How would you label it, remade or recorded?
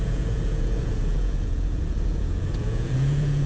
remade